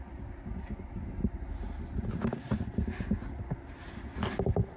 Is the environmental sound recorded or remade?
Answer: recorded